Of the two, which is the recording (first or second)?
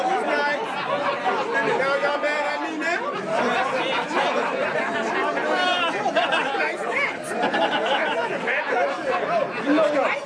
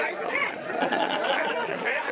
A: first